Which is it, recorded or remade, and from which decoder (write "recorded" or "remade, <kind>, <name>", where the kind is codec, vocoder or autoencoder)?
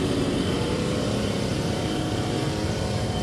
remade, vocoder, BigVGAN v2